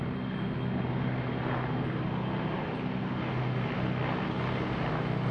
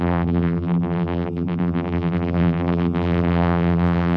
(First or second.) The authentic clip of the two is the first